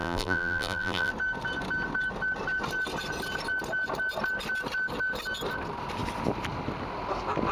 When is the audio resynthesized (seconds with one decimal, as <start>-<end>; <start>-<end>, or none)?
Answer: 0.0-1.1

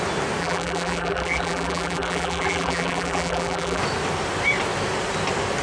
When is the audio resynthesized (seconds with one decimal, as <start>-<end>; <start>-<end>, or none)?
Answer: 0.4-3.8

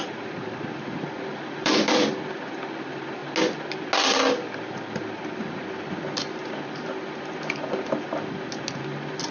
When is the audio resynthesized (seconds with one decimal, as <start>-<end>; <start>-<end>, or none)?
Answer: 1.3-2.1

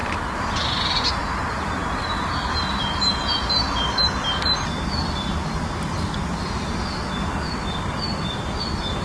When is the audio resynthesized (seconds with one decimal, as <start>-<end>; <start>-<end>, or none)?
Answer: none

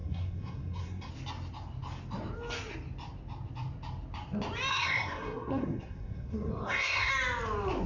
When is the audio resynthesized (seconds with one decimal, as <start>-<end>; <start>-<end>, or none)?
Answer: 0.0-1.1; 4.7-7.1

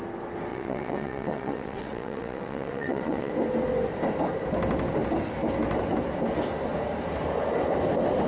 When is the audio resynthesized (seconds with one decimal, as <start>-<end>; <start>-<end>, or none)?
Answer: 0.5-3.3

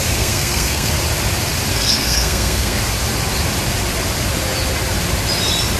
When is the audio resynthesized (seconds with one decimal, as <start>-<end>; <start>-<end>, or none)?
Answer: 0.0-0.9; 1.7-2.8